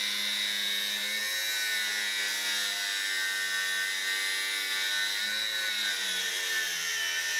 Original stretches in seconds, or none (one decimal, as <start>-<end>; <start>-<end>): 0.0-5.9; 6.9-7.4